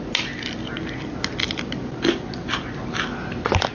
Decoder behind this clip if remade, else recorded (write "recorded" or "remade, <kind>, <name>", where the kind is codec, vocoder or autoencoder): recorded